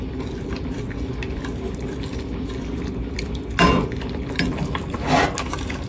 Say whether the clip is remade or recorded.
recorded